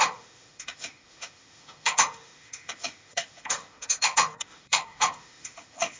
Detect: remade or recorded remade